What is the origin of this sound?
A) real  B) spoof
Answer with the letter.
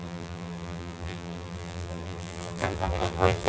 B